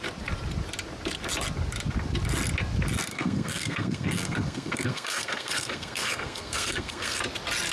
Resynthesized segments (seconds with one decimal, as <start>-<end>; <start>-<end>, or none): 3.1-7.2

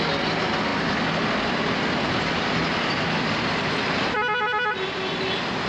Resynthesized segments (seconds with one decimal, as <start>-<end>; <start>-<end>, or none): none